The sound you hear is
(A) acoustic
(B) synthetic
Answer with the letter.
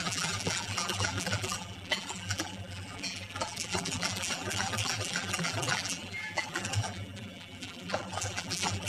B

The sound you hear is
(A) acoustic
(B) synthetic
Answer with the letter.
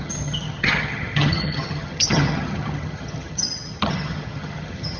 B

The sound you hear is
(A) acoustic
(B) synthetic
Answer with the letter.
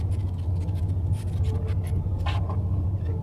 A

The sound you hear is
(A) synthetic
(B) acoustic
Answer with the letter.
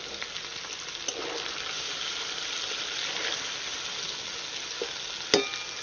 B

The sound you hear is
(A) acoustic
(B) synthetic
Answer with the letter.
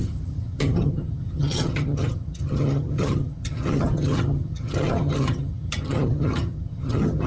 B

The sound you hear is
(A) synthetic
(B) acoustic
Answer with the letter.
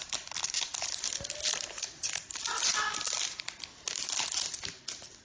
B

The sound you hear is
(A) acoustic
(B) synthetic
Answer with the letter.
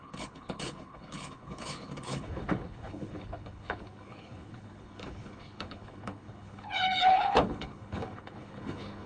B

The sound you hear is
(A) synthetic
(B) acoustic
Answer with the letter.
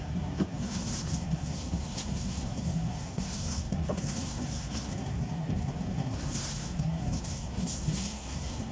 A